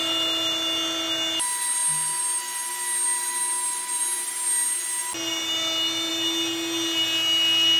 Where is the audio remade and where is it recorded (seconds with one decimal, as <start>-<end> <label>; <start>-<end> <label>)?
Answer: 0.0-7.8 recorded